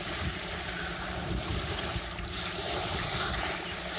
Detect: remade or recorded remade